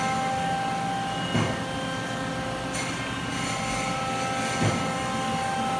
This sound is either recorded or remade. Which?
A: recorded